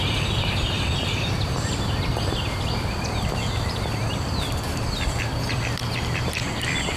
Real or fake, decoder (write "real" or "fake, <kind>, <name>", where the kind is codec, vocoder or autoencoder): fake, vocoder, BigVGAN v2